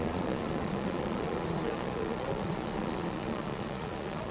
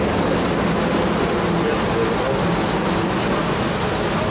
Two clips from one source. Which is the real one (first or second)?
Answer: second